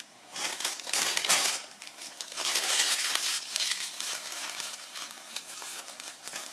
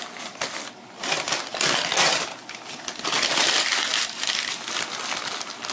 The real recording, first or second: second